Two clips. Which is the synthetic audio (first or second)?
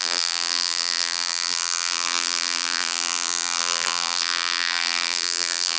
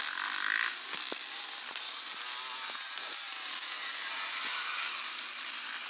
first